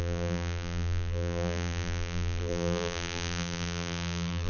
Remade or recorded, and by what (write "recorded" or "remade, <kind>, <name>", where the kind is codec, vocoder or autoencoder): remade, vocoder, BigVGAN v2